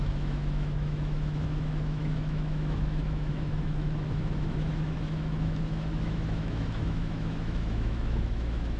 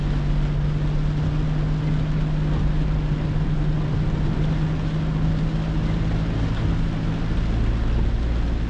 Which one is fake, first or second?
first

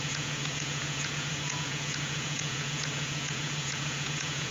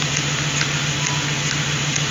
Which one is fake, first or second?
first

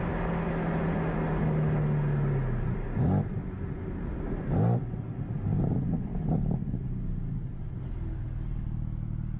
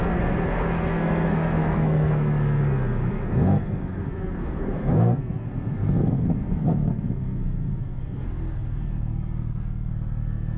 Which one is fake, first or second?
second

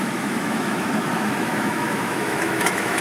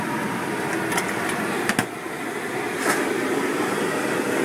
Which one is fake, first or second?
first